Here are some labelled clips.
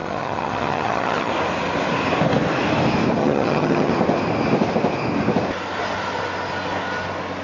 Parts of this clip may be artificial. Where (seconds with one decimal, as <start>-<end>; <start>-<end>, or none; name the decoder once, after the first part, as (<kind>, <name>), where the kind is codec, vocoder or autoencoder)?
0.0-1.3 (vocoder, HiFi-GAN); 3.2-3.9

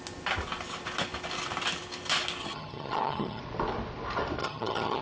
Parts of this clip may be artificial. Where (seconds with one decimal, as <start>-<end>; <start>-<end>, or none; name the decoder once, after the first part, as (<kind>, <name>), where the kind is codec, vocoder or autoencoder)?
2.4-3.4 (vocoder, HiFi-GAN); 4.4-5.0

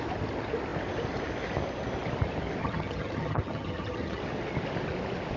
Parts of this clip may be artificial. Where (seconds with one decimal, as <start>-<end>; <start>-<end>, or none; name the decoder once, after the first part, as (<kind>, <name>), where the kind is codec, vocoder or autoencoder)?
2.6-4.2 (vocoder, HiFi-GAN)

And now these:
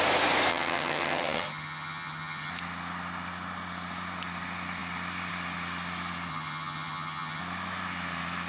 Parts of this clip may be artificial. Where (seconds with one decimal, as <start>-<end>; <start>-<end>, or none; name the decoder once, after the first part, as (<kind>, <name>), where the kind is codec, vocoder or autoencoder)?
0.5-2.5 (vocoder, HiFi-GAN); 6.3-7.4

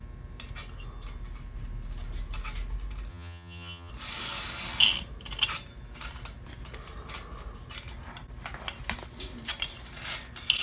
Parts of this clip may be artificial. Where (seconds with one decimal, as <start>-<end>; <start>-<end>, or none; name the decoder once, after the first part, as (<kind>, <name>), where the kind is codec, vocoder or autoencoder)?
3.1-3.9 (vocoder, HiFi-GAN)

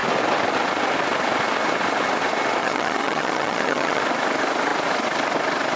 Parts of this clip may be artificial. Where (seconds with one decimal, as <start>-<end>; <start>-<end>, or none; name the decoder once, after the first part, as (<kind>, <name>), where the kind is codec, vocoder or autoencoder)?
2.6-4.0 (vocoder, HiFi-GAN)

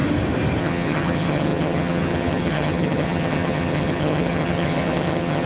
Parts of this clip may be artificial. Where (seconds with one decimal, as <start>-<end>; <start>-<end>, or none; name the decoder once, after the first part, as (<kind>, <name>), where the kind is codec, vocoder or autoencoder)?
0.6-5.5 (vocoder, HiFi-GAN)